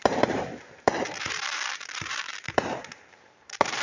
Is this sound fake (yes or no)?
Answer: yes